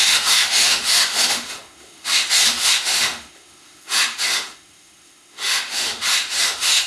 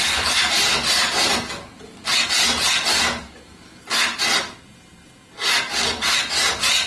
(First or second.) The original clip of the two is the second